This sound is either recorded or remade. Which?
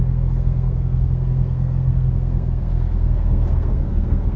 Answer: remade